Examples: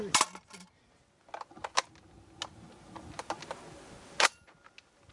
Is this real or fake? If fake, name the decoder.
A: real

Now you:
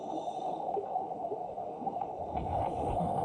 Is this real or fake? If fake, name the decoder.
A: fake, autoencoder, DAC-VAE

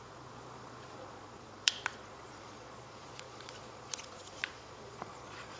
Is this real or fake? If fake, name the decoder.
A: fake, vocoder, Vocos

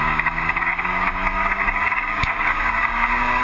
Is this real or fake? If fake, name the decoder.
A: fake, codec, DAC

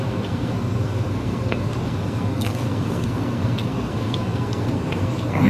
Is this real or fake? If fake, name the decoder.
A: fake, codec, SNAC